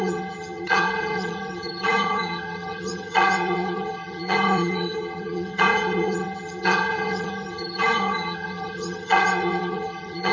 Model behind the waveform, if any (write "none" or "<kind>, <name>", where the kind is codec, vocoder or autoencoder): vocoder, HiFi-GAN